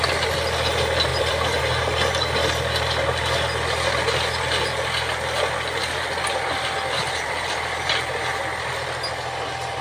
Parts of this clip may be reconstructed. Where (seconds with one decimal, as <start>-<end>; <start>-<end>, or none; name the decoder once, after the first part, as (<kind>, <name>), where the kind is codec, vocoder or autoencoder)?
1.1-1.6 (vocoder, BigVGAN v2)